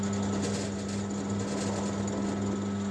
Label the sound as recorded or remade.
recorded